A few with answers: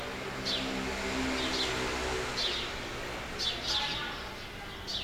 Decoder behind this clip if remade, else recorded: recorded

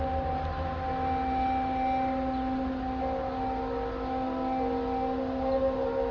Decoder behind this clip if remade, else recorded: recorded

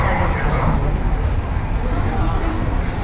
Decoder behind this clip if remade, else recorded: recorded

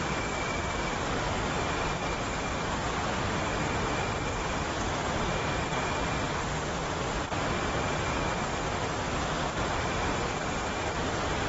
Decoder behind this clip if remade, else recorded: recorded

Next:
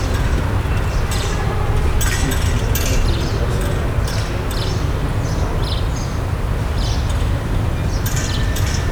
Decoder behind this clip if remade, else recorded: recorded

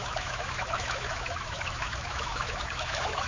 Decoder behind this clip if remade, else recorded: remade, autoencoder, DAC-VAE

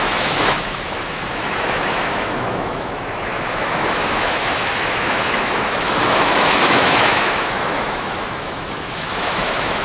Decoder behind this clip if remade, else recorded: remade, autoencoder, DAC-VAE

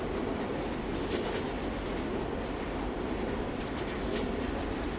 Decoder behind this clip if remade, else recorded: recorded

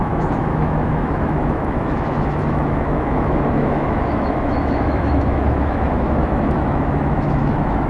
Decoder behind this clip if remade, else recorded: remade, autoencoder, DAC-VAE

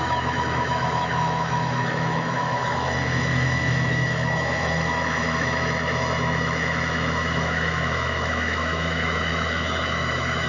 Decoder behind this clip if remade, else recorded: remade, autoencoder, DAC-VAE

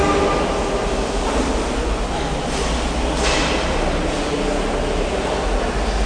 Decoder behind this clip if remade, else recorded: recorded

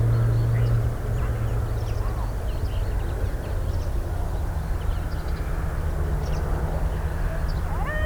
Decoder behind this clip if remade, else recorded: recorded